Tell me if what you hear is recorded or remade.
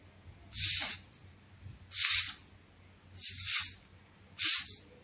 recorded